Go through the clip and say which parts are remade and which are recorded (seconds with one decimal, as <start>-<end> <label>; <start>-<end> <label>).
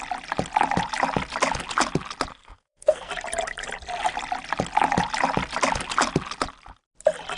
0.0-2.3 recorded; 2.3-3.1 remade; 3.1-7.4 recorded